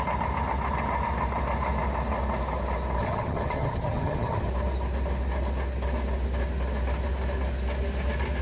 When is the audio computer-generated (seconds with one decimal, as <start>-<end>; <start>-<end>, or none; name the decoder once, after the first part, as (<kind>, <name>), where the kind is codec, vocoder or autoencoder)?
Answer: 3.0-4.5 (vocoder, HiFi-GAN)

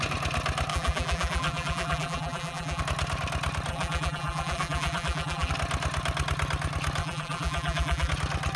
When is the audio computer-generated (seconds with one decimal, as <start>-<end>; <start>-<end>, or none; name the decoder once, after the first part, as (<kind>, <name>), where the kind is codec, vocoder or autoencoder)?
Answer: 0.7-2.8 (vocoder, BigVGAN v2); 3.7-5.5; 7.0-8.1

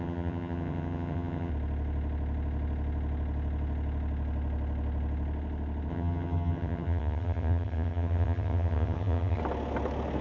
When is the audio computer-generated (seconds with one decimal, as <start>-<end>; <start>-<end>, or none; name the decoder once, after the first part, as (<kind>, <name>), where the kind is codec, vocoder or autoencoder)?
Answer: 0.0-1.5 (vocoder, HiFi-GAN); 5.9-9.4

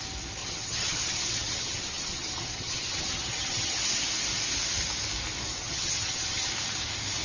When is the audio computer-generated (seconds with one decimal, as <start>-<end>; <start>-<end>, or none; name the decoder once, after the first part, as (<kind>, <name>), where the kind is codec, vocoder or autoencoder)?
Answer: 0.4-3.8 (vocoder, HiFi-GAN); 5.6-6.5

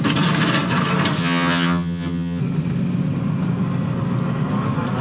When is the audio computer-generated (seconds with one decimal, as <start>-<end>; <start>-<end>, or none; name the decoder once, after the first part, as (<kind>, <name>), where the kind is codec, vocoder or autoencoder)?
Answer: 1.2-2.4 (vocoder, HiFi-GAN)